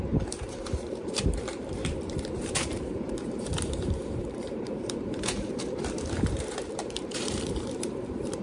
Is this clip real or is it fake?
fake